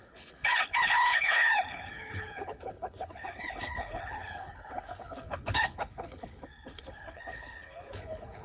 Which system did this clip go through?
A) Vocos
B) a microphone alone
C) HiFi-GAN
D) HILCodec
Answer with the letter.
D